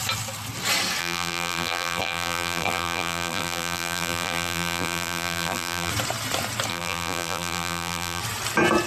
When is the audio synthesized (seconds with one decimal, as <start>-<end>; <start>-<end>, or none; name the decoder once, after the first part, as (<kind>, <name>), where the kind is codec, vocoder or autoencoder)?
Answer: 1.0-5.9 (vocoder, BigVGAN v2); 6.7-8.2